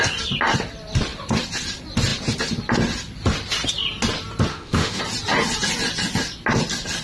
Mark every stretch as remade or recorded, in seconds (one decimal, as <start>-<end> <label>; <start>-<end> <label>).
0.0-4.5 recorded; 4.5-5.0 remade; 5.0-7.0 recorded